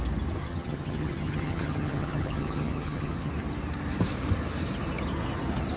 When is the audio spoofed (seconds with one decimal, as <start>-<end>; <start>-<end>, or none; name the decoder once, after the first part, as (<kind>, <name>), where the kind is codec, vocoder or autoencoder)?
0.4-3.3 (vocoder, HiFi-GAN)